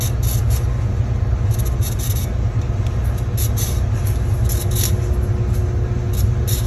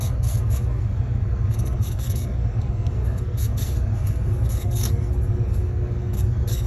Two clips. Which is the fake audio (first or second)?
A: second